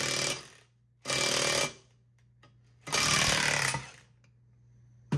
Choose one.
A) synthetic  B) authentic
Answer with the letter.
B